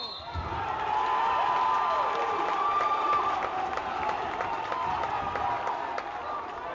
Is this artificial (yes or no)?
no